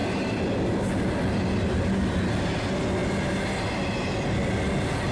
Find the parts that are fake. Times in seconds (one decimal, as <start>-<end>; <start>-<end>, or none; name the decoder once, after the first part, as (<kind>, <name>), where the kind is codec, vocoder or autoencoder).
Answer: none